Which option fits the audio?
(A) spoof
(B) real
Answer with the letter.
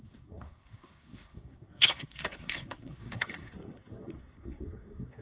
A